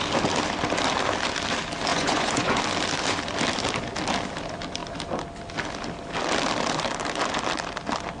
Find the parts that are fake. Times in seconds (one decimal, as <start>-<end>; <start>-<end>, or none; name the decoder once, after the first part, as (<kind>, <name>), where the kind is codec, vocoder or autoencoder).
1.9-2.6 (vocoder, Vocos)